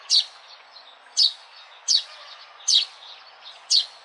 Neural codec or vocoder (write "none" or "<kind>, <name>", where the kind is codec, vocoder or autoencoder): vocoder, Vocos